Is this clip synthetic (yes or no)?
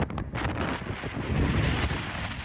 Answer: no